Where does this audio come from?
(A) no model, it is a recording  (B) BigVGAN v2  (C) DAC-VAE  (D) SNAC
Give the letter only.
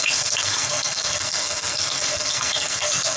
D